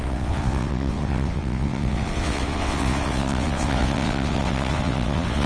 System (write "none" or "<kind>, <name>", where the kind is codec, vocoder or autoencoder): vocoder, WaveNeXt